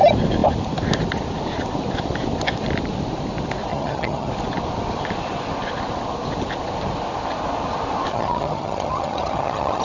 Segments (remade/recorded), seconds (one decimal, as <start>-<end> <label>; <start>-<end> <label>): 0.0-3.7 recorded; 3.7-4.3 remade; 4.3-8.1 recorded; 8.1-9.8 remade